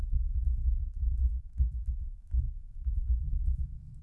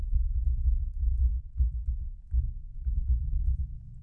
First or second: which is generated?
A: first